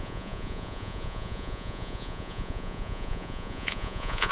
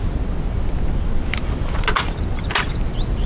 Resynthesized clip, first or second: first